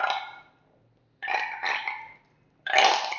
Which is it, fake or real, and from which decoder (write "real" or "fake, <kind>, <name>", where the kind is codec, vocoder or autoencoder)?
real